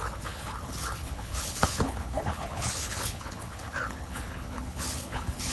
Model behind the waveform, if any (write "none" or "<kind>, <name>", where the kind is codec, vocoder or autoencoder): codec, HILCodec